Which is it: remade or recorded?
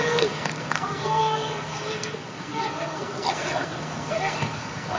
remade